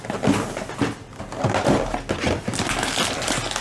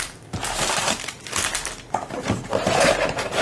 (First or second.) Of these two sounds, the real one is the first